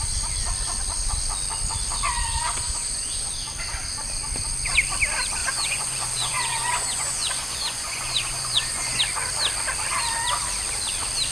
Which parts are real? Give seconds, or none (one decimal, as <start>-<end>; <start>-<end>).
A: 0.0-2.3; 3.3-5.4; 9.0-11.3